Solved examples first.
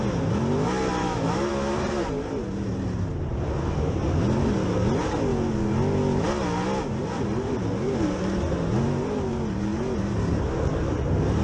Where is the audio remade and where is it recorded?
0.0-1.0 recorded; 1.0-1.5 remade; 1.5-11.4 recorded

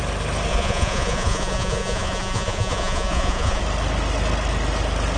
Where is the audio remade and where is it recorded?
0.0-0.5 recorded; 0.5-3.6 remade; 3.6-5.2 recorded

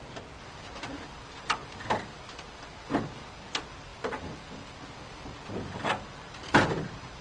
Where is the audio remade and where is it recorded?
0.0-7.2 recorded

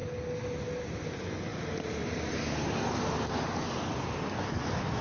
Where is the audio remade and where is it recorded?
0.0-5.0 recorded

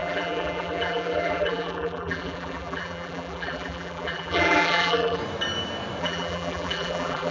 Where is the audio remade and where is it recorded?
0.0-5.2 remade; 5.2-6.0 recorded; 6.0-7.3 remade

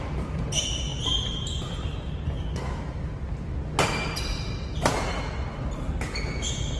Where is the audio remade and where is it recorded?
0.0-6.8 recorded